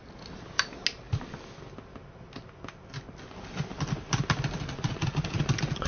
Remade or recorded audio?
recorded